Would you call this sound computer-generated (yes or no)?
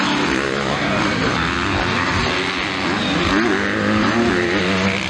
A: no